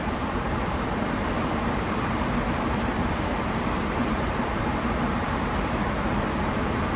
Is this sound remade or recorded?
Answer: remade